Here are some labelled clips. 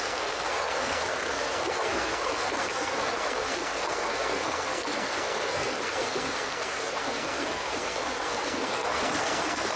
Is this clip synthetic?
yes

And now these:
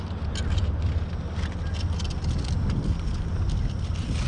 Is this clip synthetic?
no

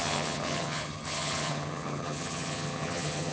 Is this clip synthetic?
yes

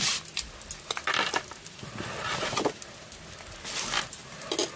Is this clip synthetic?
no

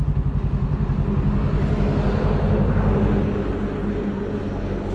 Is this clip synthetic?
no